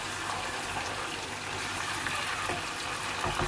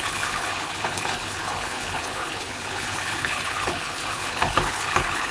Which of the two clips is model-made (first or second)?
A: second